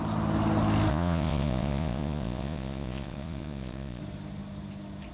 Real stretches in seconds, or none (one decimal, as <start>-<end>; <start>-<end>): 0.0-0.9; 4.0-5.1